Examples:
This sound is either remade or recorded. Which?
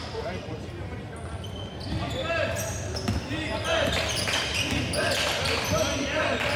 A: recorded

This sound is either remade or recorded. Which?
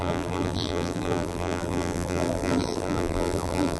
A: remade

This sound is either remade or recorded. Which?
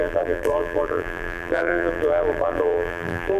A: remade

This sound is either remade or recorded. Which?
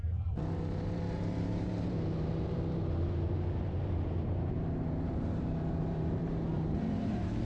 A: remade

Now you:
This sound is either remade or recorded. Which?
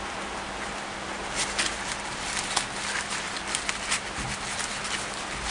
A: recorded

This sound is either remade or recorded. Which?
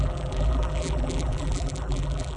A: remade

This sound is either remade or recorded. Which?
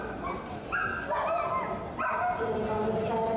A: recorded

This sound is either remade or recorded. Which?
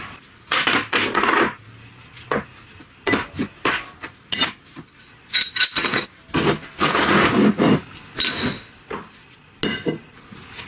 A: recorded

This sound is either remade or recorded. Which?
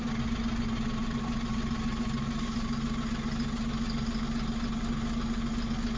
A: recorded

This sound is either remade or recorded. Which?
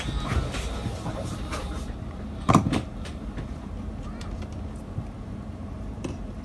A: remade